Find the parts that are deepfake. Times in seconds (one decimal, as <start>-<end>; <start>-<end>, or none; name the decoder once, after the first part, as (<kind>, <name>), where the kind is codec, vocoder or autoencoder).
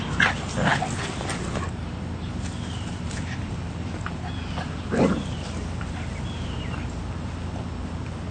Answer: 0.7-3.7 (vocoder, BigVGAN v2)